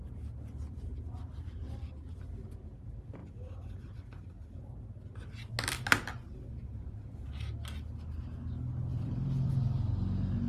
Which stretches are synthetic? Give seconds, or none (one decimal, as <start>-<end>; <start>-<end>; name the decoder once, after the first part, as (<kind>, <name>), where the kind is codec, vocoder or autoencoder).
3.2-4.8 (vocoder, BigVGAN v2); 8.9-9.5